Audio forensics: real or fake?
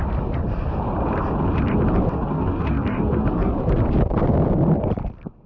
real